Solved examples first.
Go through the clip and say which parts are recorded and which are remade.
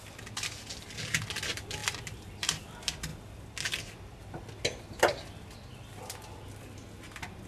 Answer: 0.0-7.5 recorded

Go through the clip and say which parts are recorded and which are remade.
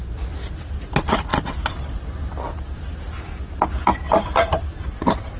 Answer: 0.0-0.6 recorded; 0.6-1.3 remade; 1.3-3.7 recorded; 3.7-5.4 remade